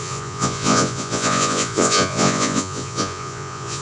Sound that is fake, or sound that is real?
fake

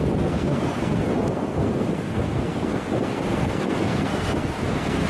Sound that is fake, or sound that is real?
fake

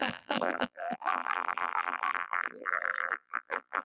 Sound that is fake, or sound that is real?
fake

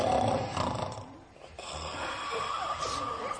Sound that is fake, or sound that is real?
real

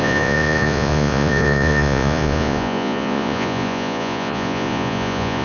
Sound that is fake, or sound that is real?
fake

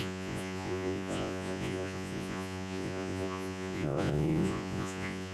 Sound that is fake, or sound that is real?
fake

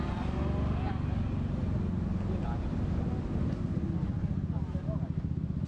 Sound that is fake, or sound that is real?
real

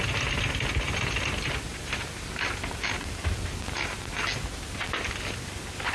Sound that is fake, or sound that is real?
real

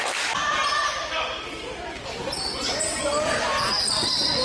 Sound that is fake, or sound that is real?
real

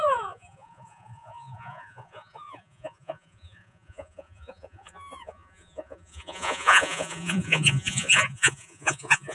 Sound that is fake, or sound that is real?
fake